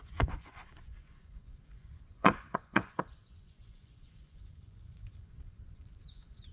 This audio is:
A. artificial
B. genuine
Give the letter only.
A